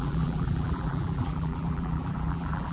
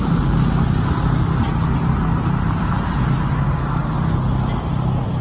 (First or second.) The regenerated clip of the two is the first